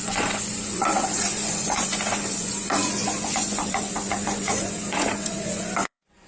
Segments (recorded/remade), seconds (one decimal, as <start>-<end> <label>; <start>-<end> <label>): 0.0-6.3 remade